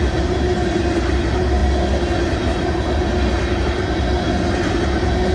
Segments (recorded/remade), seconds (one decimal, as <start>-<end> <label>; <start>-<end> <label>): 0.0-5.3 recorded

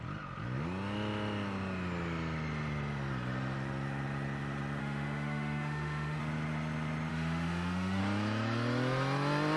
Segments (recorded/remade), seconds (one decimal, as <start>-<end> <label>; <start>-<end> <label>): 0.0-4.8 recorded; 4.8-6.2 remade; 6.2-7.1 recorded; 7.1-8.0 remade; 8.0-9.6 recorded

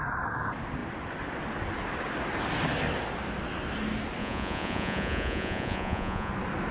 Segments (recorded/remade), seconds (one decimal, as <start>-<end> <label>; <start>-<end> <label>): 0.0-4.2 recorded; 4.2-6.3 remade; 6.3-6.7 recorded

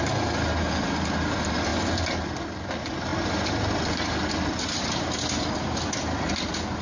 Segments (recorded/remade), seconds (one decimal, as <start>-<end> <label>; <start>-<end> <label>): 0.0-6.8 recorded

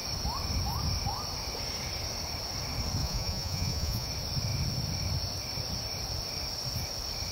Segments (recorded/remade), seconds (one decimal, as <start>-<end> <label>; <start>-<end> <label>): 0.0-3.0 recorded; 3.0-4.1 remade; 4.1-7.3 recorded

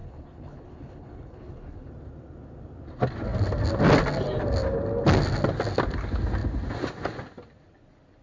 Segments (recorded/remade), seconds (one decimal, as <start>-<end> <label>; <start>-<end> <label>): 0.0-1.9 remade; 1.9-8.2 recorded